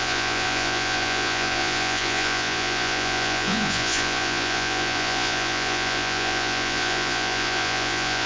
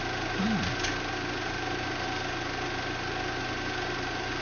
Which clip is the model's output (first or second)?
first